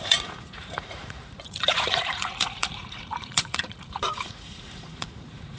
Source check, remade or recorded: remade